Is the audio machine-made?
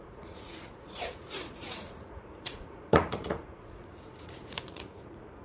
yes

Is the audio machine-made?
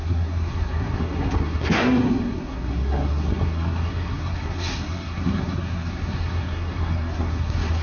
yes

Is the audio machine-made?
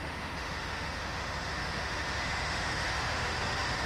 yes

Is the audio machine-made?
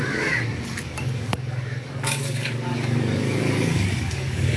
yes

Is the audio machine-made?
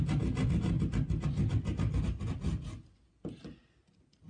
no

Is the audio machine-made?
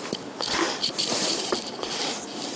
yes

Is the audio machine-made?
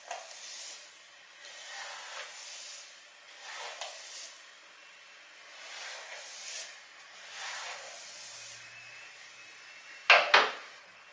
no